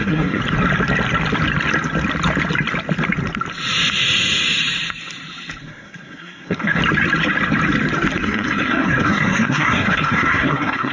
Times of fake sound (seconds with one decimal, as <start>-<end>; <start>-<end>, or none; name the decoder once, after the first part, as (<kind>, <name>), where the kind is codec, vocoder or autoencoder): 0.0-0.4 (codec, SNAC); 5.6-6.8; 8.2-10.9